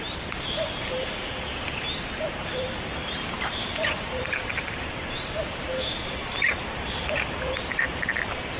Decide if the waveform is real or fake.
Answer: fake